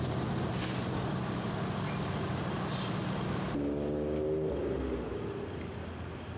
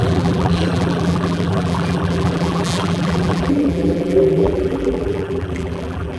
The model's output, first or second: second